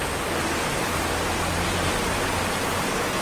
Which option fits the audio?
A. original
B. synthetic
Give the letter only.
A